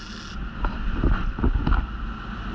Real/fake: real